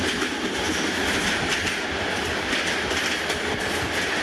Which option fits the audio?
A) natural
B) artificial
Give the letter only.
A